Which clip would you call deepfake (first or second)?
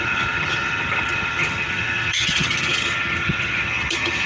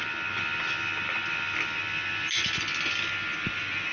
first